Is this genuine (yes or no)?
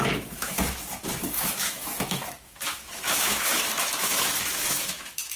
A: no